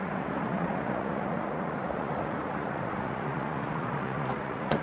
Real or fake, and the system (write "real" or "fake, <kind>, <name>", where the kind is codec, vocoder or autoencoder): fake, vocoder, Vocos